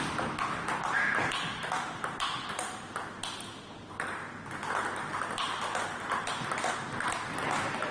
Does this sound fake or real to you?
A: real